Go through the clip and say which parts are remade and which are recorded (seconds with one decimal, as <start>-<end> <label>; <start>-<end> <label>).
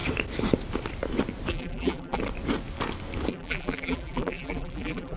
0.0-1.5 recorded; 1.5-2.2 remade; 2.2-3.3 recorded; 3.3-5.2 remade